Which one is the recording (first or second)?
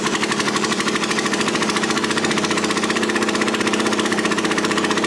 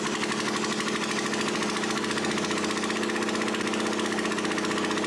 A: second